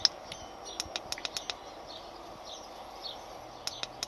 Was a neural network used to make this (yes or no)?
no